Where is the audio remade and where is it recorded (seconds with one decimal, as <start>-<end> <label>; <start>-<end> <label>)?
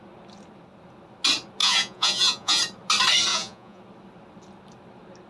0.0-1.6 recorded; 1.6-2.6 remade; 2.6-3.3 recorded; 3.3-3.8 remade; 3.8-5.3 recorded